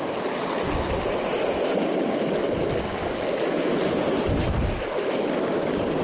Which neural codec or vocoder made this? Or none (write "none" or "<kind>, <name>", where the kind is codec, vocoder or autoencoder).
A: none